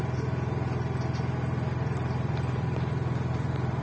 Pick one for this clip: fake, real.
real